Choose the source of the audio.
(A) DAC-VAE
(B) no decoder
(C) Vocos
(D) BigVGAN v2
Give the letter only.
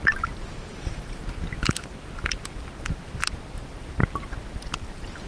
B